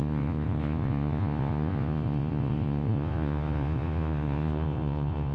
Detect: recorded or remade remade